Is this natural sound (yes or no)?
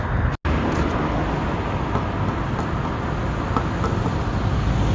yes